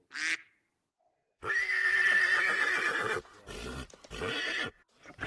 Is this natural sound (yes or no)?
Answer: yes